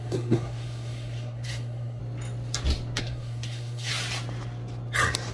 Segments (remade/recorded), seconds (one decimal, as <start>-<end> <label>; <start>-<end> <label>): 0.0-2.0 remade; 2.0-3.0 recorded; 3.0-3.9 remade; 3.9-5.3 recorded